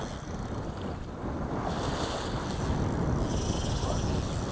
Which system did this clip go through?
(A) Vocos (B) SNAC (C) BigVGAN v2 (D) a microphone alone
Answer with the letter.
D